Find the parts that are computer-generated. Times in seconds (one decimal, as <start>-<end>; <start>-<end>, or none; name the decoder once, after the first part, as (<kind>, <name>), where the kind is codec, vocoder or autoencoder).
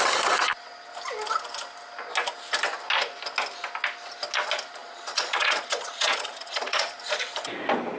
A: 4.8-7.0 (vocoder, Vocos)